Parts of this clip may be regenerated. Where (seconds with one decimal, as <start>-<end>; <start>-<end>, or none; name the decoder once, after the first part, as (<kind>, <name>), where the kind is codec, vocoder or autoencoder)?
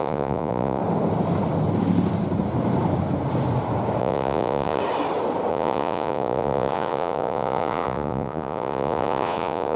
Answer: 0.0-0.8 (vocoder, Vocos); 4.0-4.8; 5.5-9.8